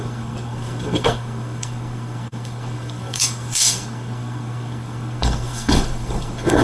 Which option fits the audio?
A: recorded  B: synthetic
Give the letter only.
B